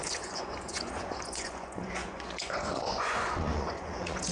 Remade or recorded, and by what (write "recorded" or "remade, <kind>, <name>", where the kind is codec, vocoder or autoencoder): remade, vocoder, Vocos